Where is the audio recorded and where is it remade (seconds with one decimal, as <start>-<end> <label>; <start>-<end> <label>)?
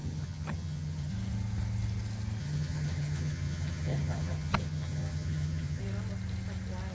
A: 0.0-1.1 remade; 1.1-2.4 recorded; 2.4-5.8 remade; 5.8-6.9 recorded